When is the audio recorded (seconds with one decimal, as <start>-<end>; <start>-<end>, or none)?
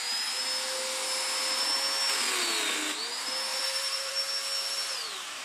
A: 0.0-3.5; 4.1-5.4